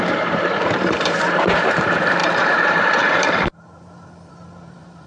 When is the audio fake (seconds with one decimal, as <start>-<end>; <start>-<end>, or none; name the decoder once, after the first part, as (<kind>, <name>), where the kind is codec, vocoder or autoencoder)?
0.0-5.1 (vocoder, BigVGAN v2)